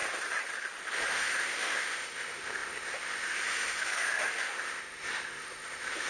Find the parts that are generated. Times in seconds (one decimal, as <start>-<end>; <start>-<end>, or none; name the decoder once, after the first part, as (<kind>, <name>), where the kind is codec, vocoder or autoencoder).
1.1-6.1 (autoencoder, DAC-VAE)